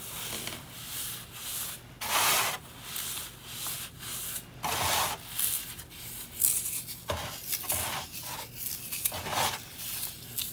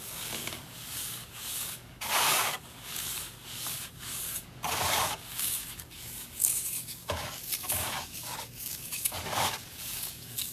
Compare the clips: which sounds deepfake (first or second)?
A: second